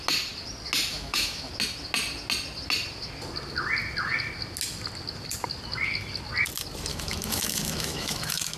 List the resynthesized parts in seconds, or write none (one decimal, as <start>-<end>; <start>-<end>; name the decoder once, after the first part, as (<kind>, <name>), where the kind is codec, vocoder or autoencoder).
0.9-1.5 (autoencoder, DAC-VAE); 6.9-8.6